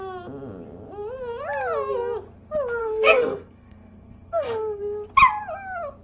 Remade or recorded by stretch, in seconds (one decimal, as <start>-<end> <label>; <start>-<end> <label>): 0.0-2.8 recorded; 2.8-4.8 remade; 4.8-6.0 recorded